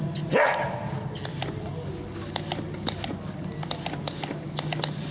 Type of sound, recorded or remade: recorded